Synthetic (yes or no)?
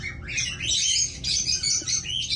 no